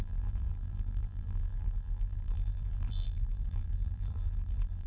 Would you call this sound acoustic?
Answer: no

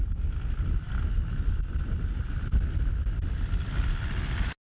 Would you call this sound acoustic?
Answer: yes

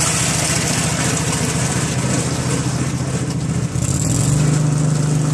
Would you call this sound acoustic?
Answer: yes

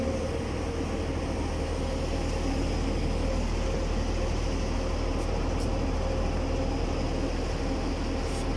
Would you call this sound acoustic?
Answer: yes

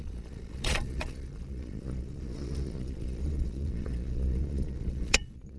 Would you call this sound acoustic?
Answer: no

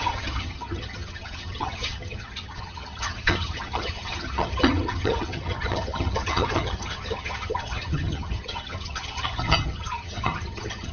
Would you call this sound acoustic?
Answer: no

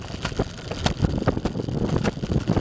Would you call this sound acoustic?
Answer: yes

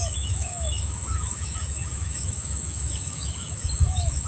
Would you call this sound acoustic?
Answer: no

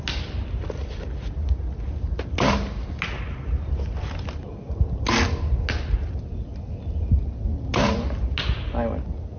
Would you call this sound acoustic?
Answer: yes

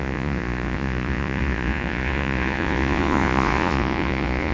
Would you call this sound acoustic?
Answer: no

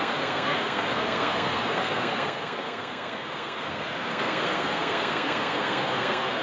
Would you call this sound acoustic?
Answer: no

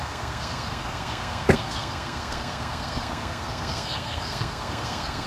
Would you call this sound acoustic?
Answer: no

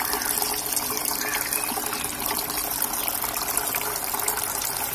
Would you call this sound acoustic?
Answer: yes